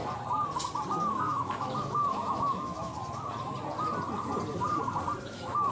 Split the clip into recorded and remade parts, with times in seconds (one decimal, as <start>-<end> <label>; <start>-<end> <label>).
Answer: 0.0-1.1 recorded; 1.1-2.9 remade; 2.9-5.2 recorded; 5.2-5.7 remade